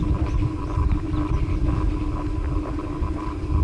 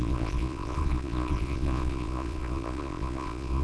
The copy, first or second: second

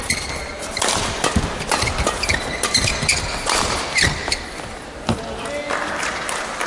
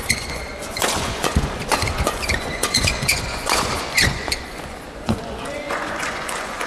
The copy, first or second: second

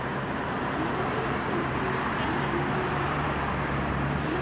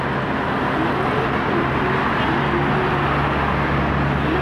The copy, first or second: first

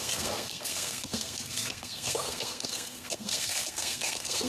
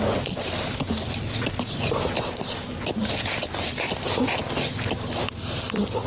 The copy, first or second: first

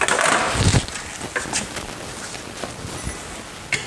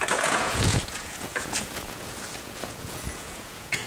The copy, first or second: second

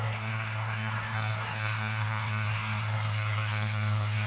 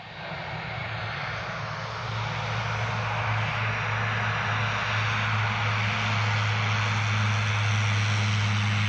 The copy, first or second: first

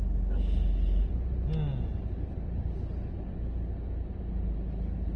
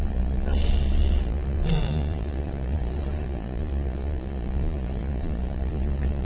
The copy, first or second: second